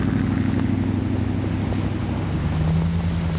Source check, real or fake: real